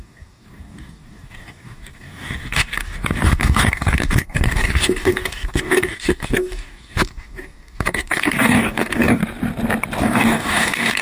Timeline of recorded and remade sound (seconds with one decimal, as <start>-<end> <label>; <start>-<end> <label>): 0.0-9.2 remade; 9.2-10.0 recorded; 10.0-11.0 remade